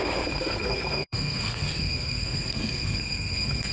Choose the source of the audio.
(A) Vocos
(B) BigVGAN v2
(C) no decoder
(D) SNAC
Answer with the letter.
D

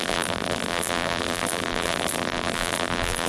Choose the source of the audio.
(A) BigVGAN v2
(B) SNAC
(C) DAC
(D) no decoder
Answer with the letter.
A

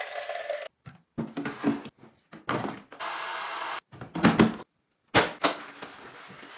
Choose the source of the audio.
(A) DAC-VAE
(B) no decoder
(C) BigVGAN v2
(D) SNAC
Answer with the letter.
B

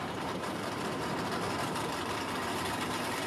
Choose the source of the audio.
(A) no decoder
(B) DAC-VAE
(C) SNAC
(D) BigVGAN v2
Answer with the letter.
D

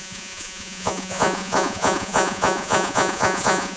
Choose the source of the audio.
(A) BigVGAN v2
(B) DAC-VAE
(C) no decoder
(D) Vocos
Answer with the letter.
D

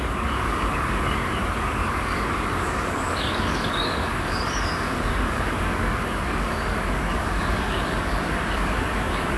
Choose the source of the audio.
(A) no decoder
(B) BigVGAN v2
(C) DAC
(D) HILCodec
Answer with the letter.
C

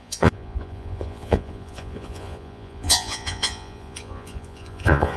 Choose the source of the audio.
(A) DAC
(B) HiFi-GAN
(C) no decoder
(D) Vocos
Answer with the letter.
D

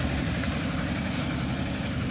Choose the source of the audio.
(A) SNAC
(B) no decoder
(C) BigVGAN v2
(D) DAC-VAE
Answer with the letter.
B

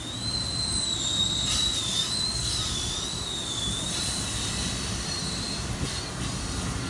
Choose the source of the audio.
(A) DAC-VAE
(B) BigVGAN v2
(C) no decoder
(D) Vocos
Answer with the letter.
C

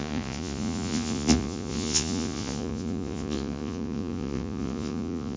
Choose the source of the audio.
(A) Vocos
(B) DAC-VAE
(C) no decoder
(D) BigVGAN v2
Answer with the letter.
A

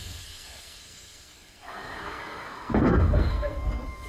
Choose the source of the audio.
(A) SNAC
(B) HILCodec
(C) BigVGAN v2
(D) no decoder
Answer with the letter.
A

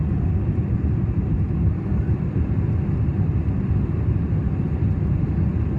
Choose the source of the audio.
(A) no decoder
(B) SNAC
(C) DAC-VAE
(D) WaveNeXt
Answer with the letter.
A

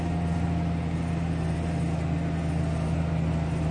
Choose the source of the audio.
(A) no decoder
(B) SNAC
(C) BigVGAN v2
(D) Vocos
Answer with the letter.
A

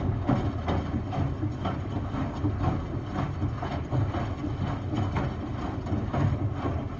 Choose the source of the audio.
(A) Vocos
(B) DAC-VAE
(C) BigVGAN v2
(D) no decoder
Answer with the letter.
D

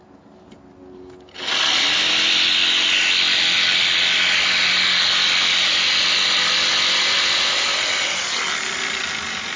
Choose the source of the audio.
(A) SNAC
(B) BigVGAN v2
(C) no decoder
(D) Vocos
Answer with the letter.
C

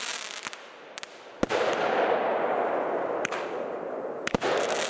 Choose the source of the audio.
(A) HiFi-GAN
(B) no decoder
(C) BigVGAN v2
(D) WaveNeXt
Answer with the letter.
B